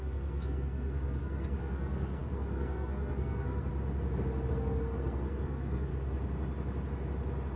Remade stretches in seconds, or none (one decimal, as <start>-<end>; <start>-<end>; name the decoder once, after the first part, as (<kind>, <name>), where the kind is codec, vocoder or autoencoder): 0.0-3.7 (codec, SNAC); 4.5-5.9